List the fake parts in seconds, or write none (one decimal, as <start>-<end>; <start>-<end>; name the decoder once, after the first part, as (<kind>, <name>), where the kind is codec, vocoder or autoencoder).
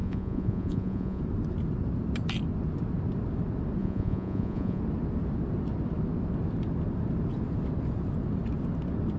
0.0-1.2 (vocoder, Vocos); 3.8-4.8